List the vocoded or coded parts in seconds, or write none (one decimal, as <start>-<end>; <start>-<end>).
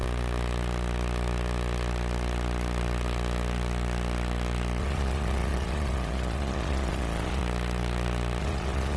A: 4.8-7.4; 8.4-9.0